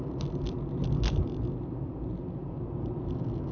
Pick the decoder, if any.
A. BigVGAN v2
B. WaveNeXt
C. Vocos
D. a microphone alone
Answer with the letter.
D